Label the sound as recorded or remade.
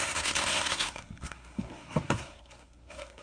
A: remade